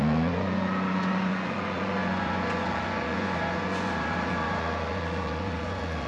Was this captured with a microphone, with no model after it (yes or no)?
no